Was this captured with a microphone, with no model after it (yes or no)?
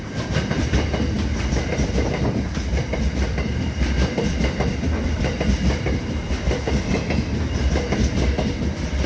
no